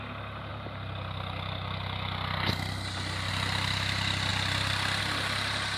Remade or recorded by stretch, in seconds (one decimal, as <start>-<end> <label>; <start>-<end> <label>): 0.0-5.8 recorded